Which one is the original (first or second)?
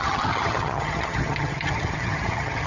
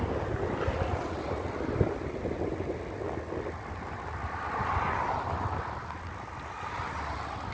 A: second